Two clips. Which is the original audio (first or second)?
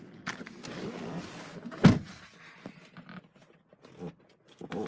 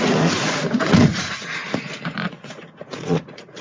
first